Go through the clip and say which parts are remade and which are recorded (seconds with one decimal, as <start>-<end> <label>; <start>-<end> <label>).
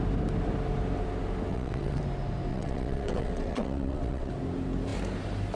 0.0-1.5 recorded; 1.5-2.0 remade; 2.0-2.5 recorded; 2.5-4.3 remade; 4.3-5.6 recorded